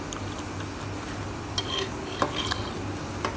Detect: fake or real real